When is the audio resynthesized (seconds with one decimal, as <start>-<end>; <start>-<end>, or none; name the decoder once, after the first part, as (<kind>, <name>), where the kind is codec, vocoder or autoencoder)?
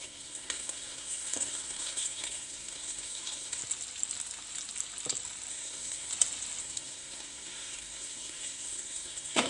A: 0.0-3.6 (codec, SNAC); 5.5-6.1; 6.6-9.5